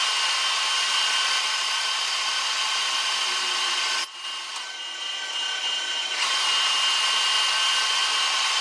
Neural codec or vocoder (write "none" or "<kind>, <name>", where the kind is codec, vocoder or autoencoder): none